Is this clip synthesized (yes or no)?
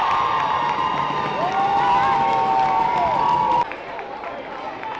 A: no